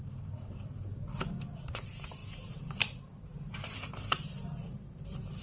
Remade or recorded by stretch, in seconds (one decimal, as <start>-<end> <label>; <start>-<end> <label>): 0.0-5.4 remade